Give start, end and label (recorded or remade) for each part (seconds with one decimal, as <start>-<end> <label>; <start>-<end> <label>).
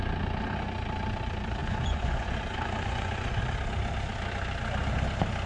0.0-1.6 recorded; 1.6-3.4 remade; 3.4-5.5 recorded